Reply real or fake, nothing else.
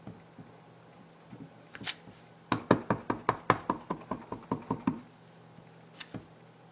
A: real